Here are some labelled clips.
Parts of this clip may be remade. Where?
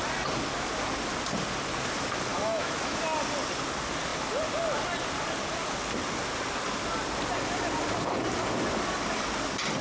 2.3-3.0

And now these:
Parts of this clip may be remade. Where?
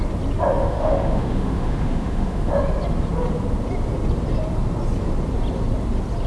0.6-2.5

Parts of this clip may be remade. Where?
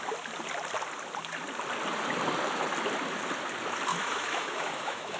3.9-5.2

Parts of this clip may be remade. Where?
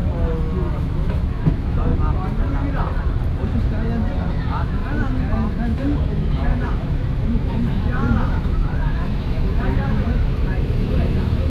0.7-1.9; 4.3-4.8; 5.5-11.5